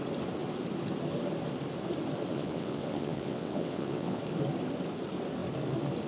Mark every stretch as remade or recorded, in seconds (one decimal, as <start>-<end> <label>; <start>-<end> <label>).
0.0-2.3 recorded; 2.3-4.2 remade; 4.2-6.1 recorded